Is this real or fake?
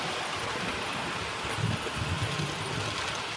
real